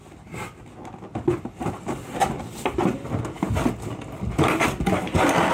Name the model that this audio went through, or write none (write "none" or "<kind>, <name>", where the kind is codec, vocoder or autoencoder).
none